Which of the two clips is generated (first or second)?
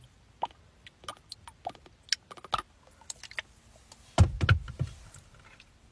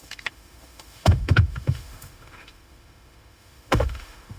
second